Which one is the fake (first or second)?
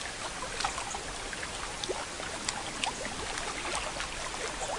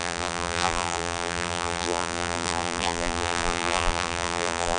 second